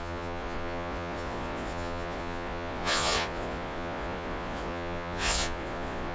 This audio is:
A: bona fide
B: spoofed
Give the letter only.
B